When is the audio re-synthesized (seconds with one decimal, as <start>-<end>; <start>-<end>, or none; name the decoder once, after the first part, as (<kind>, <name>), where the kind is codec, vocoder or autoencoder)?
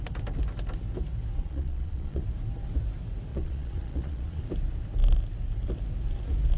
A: 1.4-2.2 (vocoder, Vocos); 3.3-4.4